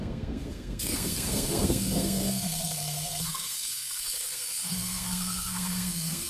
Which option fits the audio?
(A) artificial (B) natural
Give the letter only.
A